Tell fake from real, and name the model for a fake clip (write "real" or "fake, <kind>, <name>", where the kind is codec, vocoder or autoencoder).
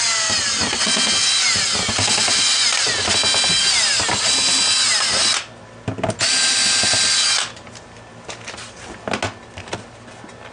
real